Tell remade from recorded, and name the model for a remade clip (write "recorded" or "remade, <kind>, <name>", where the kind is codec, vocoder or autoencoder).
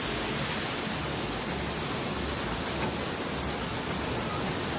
recorded